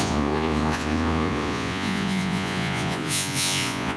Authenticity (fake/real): fake